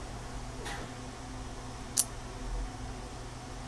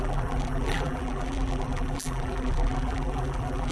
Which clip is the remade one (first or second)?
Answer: second